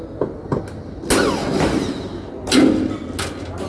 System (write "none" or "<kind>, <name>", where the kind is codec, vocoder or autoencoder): none